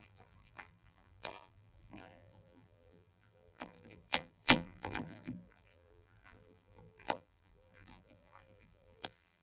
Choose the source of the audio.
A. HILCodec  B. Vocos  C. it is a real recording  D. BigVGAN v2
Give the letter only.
D